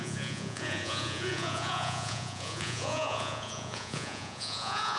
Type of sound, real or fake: fake